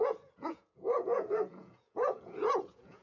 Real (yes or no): no